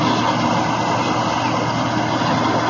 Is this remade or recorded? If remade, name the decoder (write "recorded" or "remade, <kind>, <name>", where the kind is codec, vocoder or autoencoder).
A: recorded